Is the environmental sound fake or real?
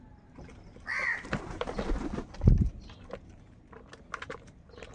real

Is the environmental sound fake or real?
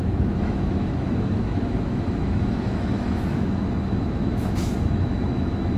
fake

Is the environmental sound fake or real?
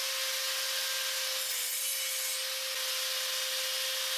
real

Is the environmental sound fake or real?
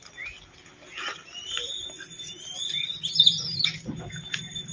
real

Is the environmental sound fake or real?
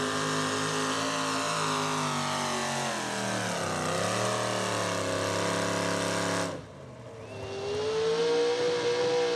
real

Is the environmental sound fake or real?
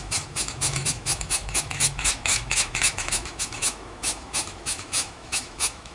fake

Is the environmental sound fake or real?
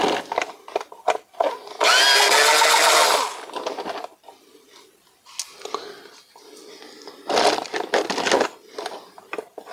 real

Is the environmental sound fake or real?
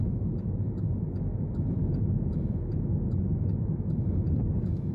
fake